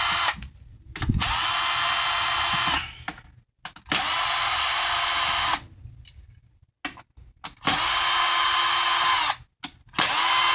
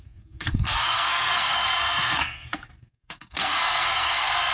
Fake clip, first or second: second